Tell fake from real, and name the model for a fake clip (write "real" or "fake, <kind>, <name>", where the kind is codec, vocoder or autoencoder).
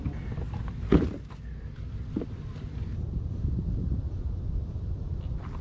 real